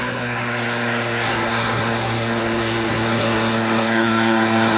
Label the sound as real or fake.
fake